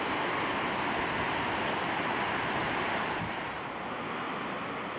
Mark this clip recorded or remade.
recorded